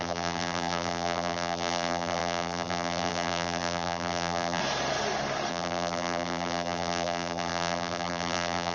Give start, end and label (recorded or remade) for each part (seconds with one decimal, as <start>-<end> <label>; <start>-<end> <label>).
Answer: 0.0-4.6 remade; 4.6-5.5 recorded; 5.5-8.7 remade